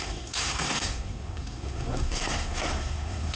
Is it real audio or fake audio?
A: fake